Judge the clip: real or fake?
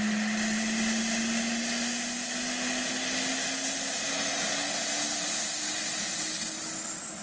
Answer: real